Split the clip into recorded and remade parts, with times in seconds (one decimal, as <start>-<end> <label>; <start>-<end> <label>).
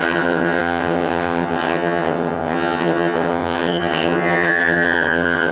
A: 0.0-5.5 remade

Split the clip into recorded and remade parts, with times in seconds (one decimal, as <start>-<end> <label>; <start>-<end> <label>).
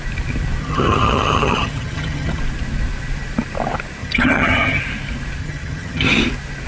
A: 0.0-0.6 recorded; 0.6-2.4 remade; 2.4-4.0 recorded; 4.0-4.8 remade; 4.8-5.4 recorded; 5.4-6.2 remade; 6.2-6.7 recorded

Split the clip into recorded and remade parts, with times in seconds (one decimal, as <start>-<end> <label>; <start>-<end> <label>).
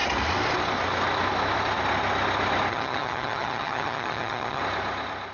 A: 0.0-2.7 recorded; 2.7-4.6 remade; 4.6-5.3 recorded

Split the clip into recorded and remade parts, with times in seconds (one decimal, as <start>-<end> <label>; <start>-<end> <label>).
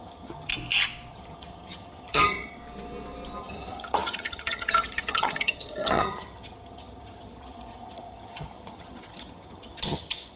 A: 0.0-0.5 remade; 0.5-1.1 recorded; 1.1-2.6 remade; 2.6-3.4 recorded; 3.4-10.4 remade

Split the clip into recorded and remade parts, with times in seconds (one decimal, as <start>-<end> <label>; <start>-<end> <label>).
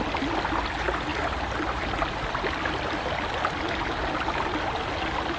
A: 0.0-5.4 recorded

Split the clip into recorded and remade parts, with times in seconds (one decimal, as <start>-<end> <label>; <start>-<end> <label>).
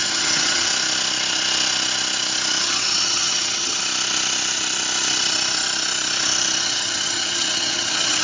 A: 0.0-0.7 remade; 0.7-2.6 recorded; 2.6-3.8 remade; 3.8-6.6 recorded; 6.6-8.2 remade